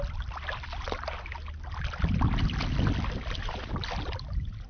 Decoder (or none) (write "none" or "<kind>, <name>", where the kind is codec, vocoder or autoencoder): none